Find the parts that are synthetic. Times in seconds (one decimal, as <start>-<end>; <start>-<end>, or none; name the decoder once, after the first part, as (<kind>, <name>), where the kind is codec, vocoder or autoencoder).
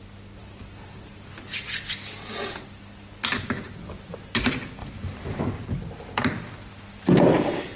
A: 4.8-5.4 (vocoder, BigVGAN v2)